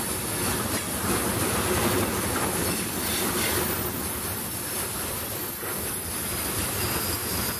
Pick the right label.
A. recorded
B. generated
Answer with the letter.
A